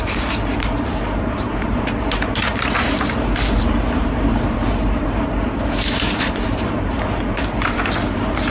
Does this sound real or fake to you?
fake